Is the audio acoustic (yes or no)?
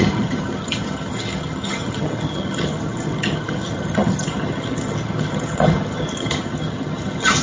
no